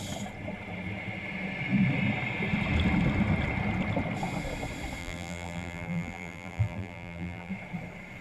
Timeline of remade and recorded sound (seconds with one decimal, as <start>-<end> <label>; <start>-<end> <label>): 0.0-5.0 recorded; 5.0-7.5 remade; 7.5-8.2 recorded